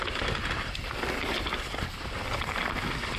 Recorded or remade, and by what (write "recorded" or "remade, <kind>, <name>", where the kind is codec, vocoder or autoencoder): recorded